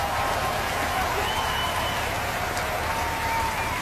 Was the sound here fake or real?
real